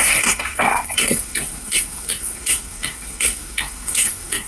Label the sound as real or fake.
fake